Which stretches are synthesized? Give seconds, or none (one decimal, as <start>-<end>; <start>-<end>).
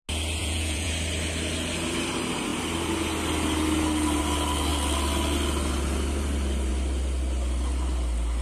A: 0.4-0.9